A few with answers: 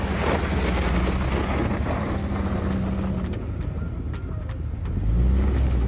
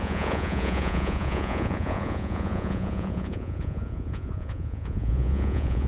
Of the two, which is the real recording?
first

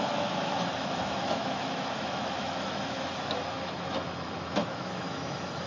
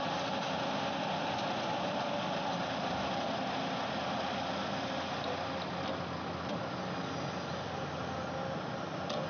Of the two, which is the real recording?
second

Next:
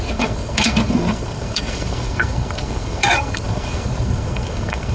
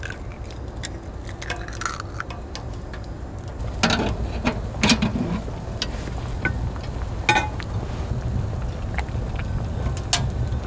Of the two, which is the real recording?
second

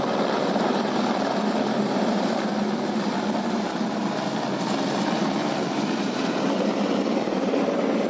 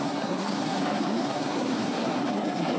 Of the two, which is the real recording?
first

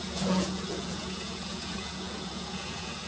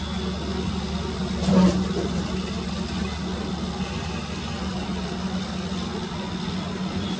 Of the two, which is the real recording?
second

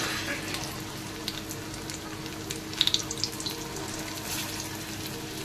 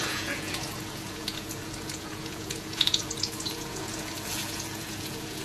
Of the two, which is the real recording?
first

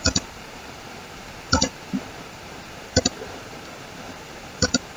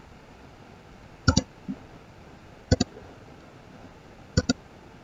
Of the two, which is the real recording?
second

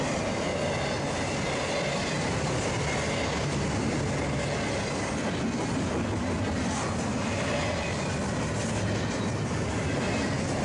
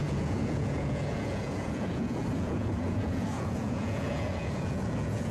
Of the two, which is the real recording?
first